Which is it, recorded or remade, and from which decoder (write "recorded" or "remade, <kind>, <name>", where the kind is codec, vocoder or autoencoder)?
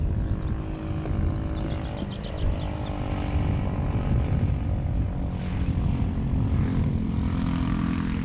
recorded